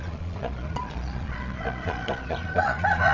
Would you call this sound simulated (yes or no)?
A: yes